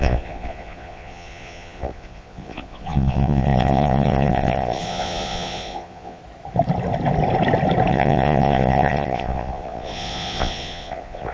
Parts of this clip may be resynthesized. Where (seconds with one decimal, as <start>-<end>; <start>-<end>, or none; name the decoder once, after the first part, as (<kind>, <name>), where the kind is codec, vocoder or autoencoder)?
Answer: 0.0-6.2 (vocoder, Vocos); 7.9-11.3